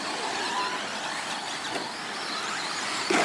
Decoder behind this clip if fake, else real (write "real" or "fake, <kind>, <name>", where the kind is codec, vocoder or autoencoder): real